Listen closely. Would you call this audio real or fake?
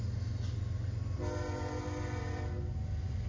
real